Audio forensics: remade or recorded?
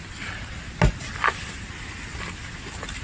recorded